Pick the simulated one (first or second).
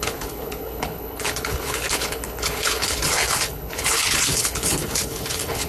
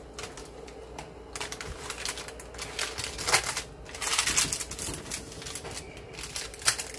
first